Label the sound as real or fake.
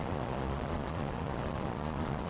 fake